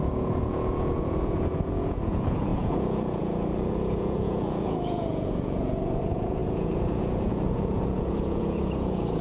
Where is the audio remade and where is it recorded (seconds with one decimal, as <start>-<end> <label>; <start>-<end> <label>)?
0.0-9.2 remade